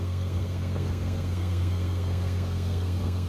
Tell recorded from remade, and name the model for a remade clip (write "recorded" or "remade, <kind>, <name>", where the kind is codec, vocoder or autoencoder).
remade, codec, SNAC